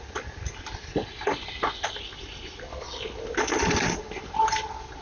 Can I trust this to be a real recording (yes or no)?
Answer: yes